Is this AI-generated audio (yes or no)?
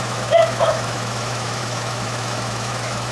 yes